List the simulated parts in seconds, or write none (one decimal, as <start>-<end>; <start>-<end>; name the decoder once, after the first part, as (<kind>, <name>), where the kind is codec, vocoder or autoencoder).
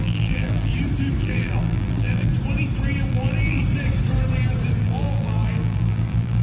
0.0-0.7 (vocoder, BigVGAN v2); 1.2-2.3; 3.1-3.6; 4.8-6.4